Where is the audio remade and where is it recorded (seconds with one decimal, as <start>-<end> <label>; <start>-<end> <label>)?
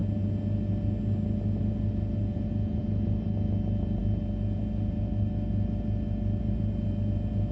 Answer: 0.0-7.5 recorded